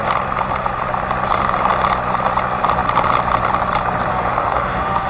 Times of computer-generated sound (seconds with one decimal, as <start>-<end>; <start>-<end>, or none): 4.1-5.1